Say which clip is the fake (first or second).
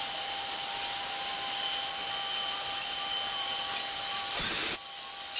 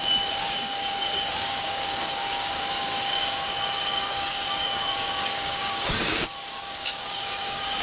second